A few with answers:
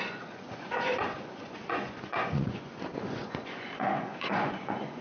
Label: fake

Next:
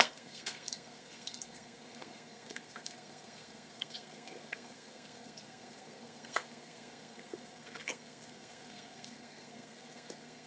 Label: fake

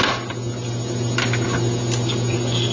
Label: real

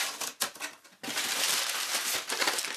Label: real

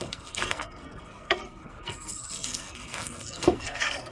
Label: fake